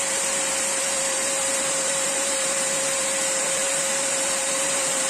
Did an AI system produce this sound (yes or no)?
yes